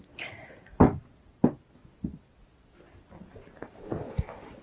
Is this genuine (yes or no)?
yes